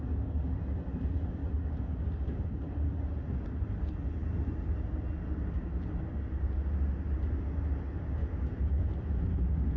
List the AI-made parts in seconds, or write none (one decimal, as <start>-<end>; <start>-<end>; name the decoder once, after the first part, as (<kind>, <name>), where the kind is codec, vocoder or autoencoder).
8.2-9.2 (autoencoder, DAC-VAE)